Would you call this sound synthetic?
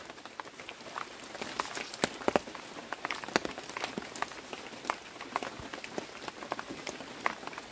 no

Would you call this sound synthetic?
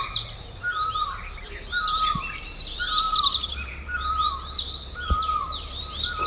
yes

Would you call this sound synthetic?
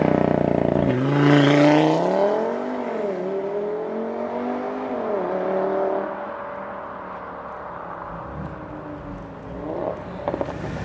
no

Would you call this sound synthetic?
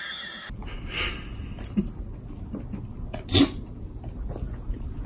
no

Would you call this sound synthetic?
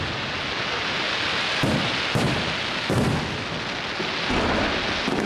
no